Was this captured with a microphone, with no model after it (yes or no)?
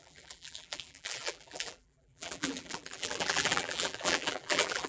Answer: no